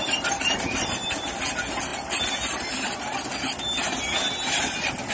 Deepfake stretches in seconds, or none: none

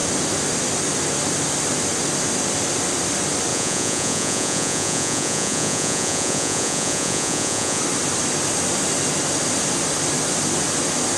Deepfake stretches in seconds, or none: 3.5-7.8 (vocoder, Vocos)

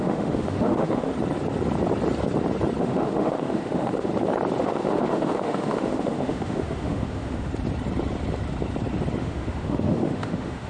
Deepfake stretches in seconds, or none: 0.0-1.1 (autoencoder, DAC-VAE); 2.8-4.1; 4.6-7.5; 9.2-10.7

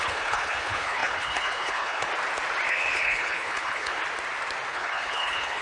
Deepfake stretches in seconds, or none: 0.0-2.1 (codec, HILCodec); 2.7-4.0; 4.7-5.6

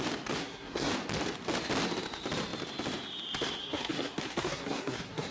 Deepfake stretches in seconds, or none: 0.4-0.9 (codec, SNAC); 3.6-5.3

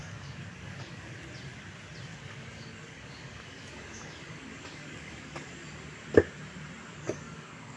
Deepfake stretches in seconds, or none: 0.0-1.3 (codec, DAC); 2.1-5.5; 6.9-7.8

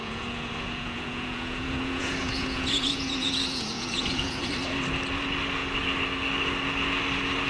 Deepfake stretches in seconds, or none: 0.0-4.5 (vocoder, Vocos)